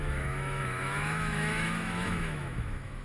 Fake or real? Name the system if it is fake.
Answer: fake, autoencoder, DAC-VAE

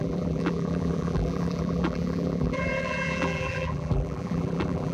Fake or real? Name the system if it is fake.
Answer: fake, vocoder, BigVGAN v2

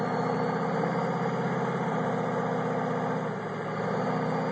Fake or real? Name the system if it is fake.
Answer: real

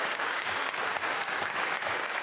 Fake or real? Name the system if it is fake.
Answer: fake, codec, DAC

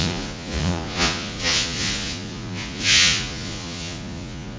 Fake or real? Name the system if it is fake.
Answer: fake, vocoder, Vocos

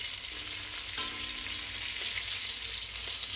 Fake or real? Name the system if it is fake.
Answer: real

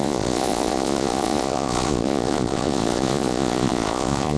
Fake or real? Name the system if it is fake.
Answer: fake, vocoder, Vocos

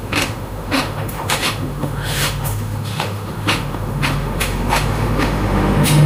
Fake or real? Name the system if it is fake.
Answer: fake, autoencoder, DAC-VAE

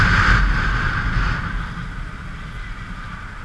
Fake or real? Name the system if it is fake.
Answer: real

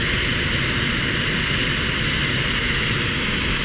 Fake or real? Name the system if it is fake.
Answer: real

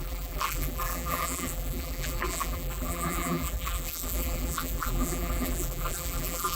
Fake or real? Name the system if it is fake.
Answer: fake, vocoder, BigVGAN v2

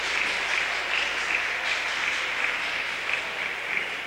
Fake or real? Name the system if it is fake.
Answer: real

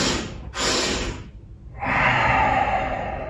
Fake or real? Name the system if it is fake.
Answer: real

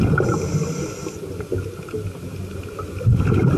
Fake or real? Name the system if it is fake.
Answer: real